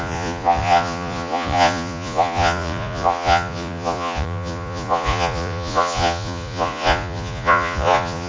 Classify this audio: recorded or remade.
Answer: remade